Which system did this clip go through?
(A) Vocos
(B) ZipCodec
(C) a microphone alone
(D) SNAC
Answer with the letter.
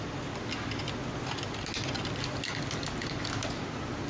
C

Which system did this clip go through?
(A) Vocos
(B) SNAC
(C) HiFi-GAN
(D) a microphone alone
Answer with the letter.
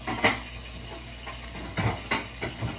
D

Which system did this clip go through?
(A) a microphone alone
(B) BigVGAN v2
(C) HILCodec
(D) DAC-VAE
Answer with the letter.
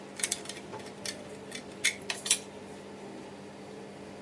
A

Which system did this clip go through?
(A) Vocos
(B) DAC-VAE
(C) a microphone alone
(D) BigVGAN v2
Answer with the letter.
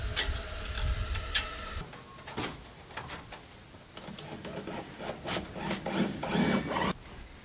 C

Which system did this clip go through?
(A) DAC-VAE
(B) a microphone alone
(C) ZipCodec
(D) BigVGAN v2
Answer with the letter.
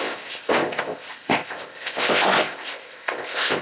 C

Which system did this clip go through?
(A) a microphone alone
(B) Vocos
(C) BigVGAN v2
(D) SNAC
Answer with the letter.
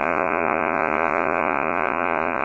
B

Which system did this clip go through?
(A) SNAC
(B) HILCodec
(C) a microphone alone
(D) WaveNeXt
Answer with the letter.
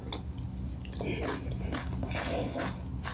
C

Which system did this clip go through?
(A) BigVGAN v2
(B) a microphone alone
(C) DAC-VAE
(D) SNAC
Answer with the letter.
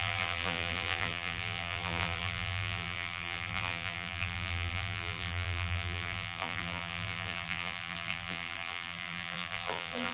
A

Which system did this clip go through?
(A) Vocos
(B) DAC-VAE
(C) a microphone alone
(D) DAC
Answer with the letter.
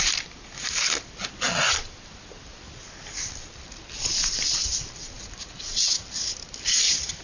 C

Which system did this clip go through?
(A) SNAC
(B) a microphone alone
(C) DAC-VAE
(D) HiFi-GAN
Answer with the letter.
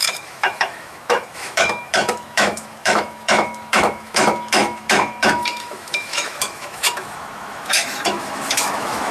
C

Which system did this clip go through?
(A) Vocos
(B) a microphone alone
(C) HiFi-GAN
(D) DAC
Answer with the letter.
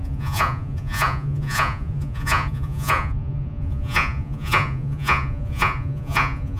A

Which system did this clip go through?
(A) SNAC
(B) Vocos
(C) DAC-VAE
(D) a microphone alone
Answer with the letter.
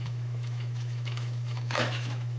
C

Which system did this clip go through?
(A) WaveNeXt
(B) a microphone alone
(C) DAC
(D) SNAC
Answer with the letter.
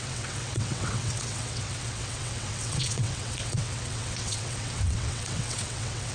A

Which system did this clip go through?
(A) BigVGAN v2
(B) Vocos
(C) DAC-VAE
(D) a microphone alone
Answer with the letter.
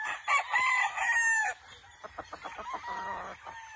D